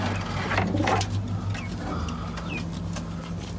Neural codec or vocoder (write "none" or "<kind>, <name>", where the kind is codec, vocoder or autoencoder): none